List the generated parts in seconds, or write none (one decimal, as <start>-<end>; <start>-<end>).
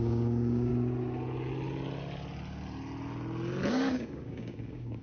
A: 0.0-0.7; 3.7-5.0